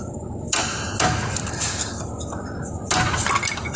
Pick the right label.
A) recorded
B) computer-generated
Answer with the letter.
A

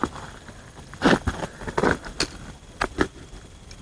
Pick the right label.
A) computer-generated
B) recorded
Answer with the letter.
B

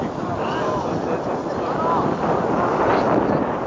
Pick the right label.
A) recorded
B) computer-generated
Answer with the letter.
A